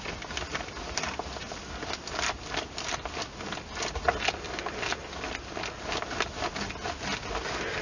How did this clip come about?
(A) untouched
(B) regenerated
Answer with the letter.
A